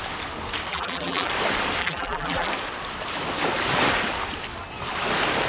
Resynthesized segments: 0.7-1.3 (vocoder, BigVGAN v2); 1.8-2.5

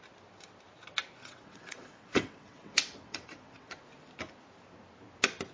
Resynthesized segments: 1.2-3.8 (vocoder, WaveNeXt)

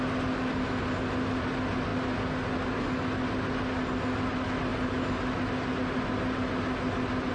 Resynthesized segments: none

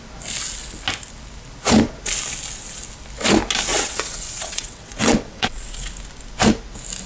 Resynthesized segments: 3.7-5.9 (vocoder, WaveNeXt)

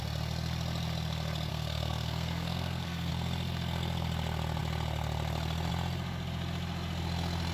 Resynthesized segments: 1.5-3.1 (codec, SNAC)

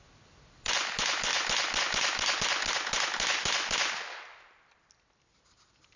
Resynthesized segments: none

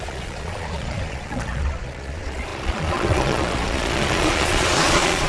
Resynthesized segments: 0.0-5.3 (vocoder, Vocos)

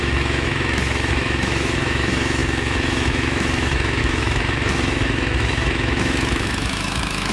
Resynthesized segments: 0.0-7.3 (autoencoder, DAC-VAE)